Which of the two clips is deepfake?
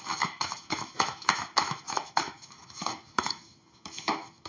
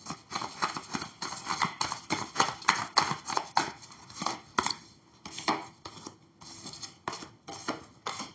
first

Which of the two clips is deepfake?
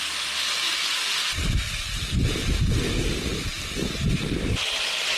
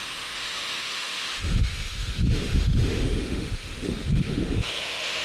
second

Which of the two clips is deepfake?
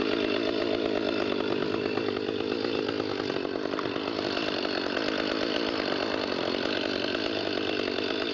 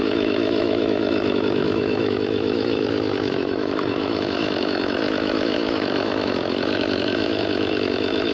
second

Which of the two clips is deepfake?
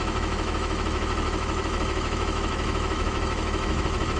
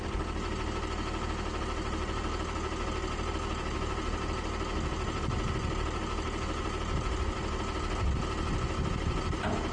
first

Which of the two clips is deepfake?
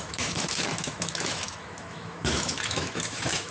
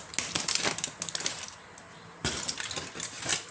first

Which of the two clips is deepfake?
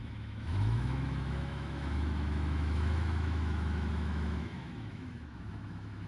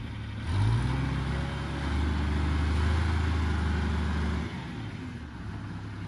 first